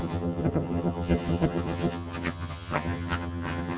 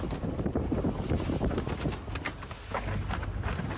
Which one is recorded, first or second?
second